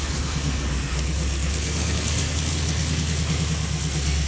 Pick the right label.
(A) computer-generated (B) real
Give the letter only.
A